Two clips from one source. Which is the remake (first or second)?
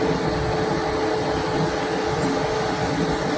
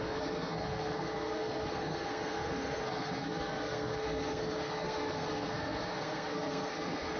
second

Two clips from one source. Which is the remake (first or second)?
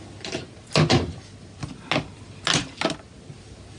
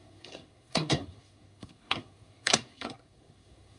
second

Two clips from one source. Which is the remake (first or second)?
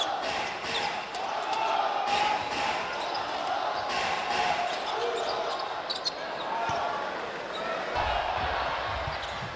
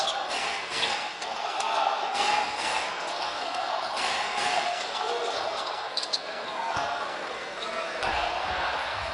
second